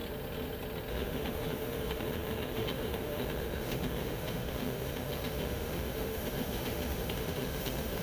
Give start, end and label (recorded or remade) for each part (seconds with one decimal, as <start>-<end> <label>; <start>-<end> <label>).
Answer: 0.0-0.9 recorded; 0.9-8.0 remade